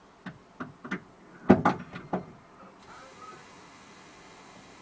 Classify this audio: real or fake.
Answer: real